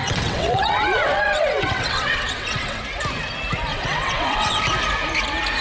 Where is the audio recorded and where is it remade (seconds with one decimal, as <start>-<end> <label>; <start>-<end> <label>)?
0.0-2.8 remade; 2.8-3.7 recorded; 3.7-4.6 remade; 4.6-5.6 recorded